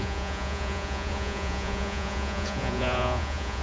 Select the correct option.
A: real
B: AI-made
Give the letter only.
B